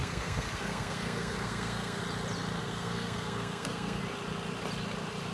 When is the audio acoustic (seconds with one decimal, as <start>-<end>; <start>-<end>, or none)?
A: 2.0-2.6; 4.0-5.3